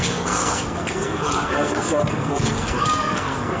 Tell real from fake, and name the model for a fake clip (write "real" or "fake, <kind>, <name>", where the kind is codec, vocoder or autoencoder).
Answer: fake, codec, SNAC